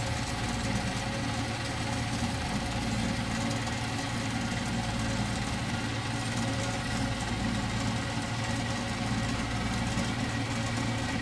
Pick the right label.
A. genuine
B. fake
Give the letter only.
A